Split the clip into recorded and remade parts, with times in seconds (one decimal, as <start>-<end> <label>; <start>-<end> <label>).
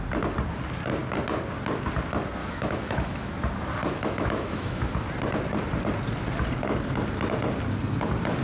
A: 0.0-2.4 recorded; 2.4-3.3 remade; 3.3-3.8 recorded; 3.8-4.9 remade; 4.9-8.4 recorded